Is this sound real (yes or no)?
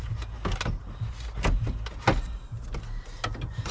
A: yes